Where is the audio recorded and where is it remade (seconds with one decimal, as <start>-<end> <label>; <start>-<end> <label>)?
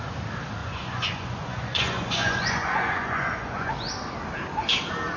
0.0-0.6 recorded; 0.6-3.7 remade; 3.7-5.2 recorded